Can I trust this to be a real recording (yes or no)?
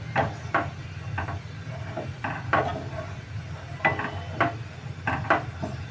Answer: yes